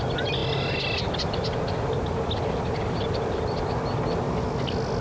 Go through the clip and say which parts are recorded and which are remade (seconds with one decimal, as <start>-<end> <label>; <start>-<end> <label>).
0.0-5.0 recorded